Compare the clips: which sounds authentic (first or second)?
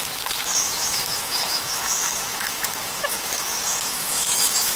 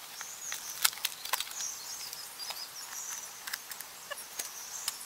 second